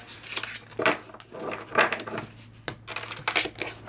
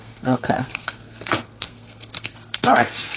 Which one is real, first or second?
first